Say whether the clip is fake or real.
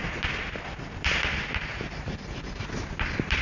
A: fake